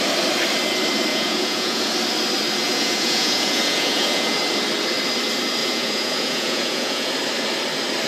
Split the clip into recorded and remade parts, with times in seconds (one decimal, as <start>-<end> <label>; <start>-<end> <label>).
0.0-1.1 recorded; 1.1-1.9 remade; 1.9-2.6 recorded; 2.6-4.4 remade; 4.4-5.6 recorded; 5.6-7.1 remade; 7.1-8.1 recorded